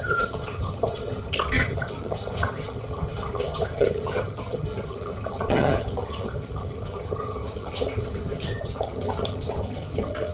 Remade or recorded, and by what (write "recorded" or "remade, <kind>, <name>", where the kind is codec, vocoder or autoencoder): remade, vocoder, HiFi-GAN